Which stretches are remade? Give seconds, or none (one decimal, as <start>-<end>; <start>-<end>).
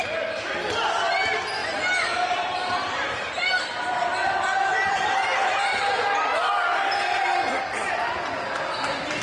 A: none